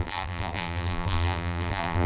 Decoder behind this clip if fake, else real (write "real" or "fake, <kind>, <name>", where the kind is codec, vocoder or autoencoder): fake, vocoder, BigVGAN v2